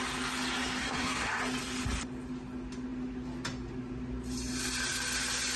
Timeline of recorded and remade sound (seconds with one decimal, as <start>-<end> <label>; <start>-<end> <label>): 0.0-0.8 recorded; 0.8-1.4 remade; 1.4-5.6 recorded